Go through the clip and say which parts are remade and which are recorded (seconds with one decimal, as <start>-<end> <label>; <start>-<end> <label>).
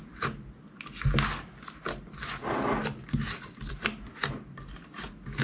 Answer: 0.0-5.4 recorded